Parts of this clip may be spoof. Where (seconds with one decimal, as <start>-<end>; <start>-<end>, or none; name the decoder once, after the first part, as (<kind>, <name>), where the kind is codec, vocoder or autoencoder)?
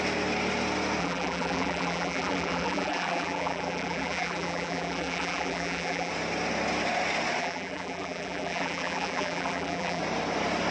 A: 1.0-6.1 (vocoder, BigVGAN v2); 7.4-10.0